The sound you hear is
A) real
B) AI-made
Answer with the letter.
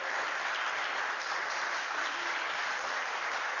A